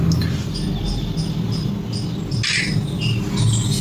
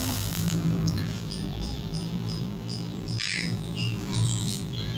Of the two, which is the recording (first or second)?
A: first